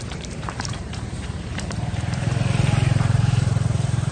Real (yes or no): no